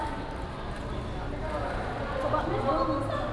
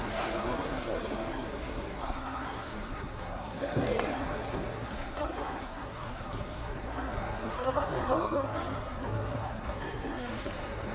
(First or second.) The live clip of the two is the first